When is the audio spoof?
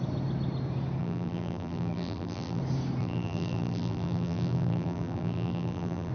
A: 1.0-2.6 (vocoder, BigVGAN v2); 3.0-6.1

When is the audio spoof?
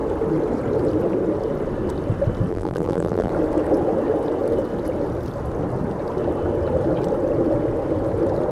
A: 2.5-3.3 (vocoder, BigVGAN v2)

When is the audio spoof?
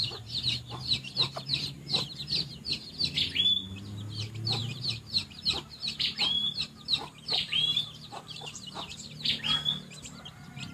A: 0.0-2.5 (vocoder, BigVGAN v2); 4.6-9.1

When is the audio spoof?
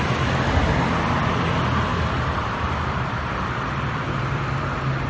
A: 1.9-4.0 (vocoder, BigVGAN v2)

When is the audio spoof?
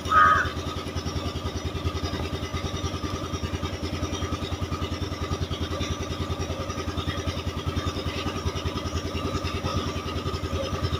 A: 0.0-0.5 (vocoder, BigVGAN v2); 2.0-2.5; 6.7-9.7; 10.3-11.0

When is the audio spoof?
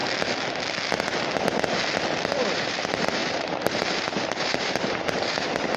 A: 2.3-5.8 (vocoder, BigVGAN v2)